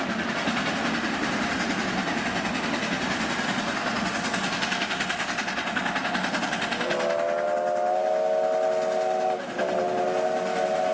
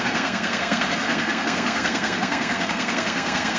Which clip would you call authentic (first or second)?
first